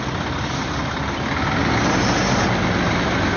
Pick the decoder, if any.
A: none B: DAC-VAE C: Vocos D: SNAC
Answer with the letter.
A